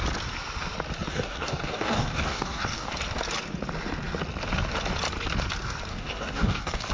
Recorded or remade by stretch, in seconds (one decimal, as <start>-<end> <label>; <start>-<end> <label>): 0.0-1.1 recorded; 1.1-2.9 remade; 2.9-5.9 recorded; 5.9-6.9 remade